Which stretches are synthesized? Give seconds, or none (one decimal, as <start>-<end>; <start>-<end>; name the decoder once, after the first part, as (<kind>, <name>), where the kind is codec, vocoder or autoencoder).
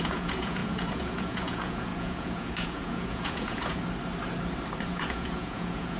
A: 0.0-3.8 (vocoder, Vocos); 4.9-6.0